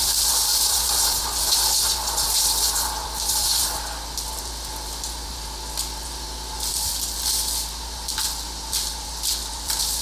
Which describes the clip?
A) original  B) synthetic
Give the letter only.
A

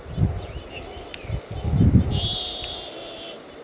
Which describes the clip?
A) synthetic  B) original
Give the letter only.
B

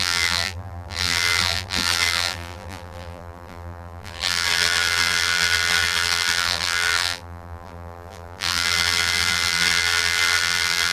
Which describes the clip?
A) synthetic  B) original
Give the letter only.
A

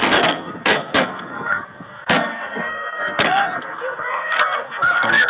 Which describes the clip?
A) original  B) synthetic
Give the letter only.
B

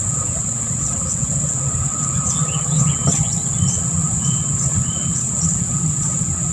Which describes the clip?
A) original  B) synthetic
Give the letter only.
B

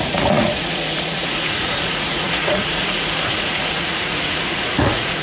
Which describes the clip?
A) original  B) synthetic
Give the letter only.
B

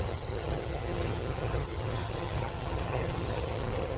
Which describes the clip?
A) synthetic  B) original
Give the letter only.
A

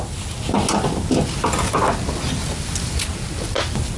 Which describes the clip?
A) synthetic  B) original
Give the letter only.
B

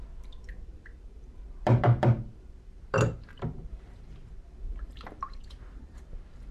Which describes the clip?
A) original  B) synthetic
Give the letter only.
B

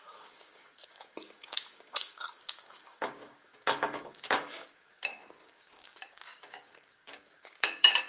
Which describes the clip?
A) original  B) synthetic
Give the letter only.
B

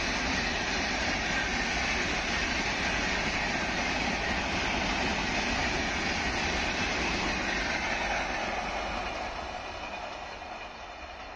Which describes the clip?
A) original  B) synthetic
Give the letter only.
A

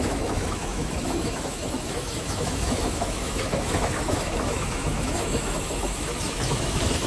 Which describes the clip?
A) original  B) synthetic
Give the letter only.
B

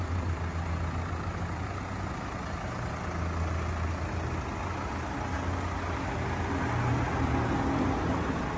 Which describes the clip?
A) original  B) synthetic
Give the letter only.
A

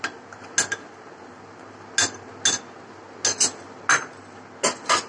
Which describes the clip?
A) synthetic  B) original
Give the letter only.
B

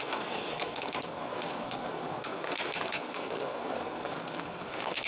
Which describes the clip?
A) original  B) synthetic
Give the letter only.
B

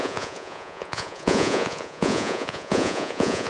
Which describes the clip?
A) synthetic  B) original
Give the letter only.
A